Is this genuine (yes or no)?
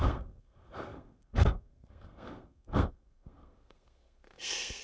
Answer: no